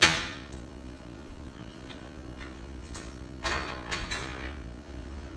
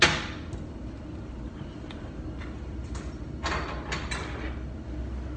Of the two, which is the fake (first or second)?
first